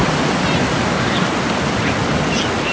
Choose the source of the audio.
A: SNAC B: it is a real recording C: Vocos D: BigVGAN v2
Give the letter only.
B